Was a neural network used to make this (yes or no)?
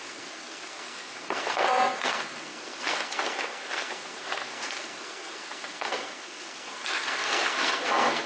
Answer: yes